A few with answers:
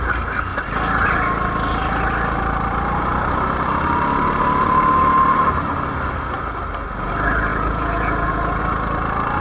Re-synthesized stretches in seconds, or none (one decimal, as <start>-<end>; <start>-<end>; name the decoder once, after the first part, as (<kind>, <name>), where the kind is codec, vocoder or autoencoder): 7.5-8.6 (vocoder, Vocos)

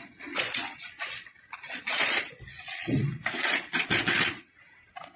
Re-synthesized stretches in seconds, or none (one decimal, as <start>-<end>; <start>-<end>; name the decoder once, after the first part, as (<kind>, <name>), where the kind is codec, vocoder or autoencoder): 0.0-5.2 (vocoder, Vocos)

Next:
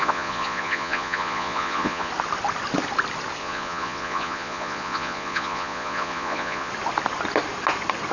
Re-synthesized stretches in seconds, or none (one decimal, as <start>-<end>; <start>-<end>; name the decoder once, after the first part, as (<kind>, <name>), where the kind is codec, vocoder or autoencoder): 0.0-2.1 (vocoder, Vocos); 3.4-6.7

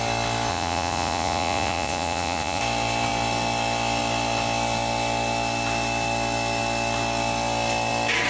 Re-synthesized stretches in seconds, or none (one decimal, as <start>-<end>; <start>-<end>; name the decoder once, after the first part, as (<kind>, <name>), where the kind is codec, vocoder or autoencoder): 0.5-2.6 (vocoder, Vocos)

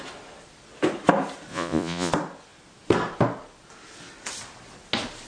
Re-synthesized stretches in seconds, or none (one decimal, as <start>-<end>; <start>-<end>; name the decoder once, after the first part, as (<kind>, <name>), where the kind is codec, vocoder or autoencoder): 1.5-2.1 (vocoder, Vocos)